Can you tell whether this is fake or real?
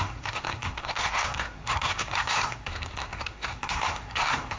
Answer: fake